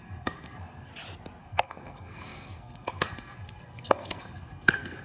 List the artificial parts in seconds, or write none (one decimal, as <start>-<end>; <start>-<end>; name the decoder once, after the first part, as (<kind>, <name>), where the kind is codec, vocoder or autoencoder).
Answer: 0.0-0.9 (codec, SNAC); 1.4-5.0